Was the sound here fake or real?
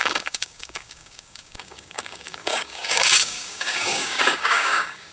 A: fake